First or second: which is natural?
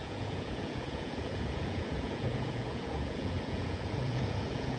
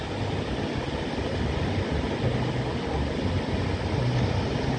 second